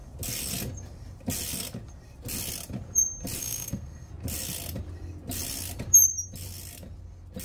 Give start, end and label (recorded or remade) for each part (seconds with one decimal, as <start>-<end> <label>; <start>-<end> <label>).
0.0-3.4 recorded; 3.4-4.1 remade; 4.1-7.4 recorded